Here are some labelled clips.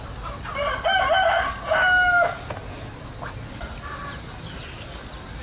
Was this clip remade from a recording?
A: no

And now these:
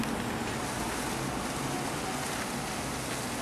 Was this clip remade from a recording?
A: no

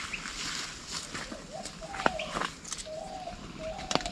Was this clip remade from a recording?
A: no